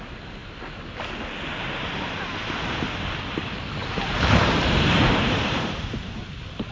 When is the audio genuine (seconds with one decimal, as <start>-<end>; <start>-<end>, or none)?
0.0-3.8; 6.2-6.7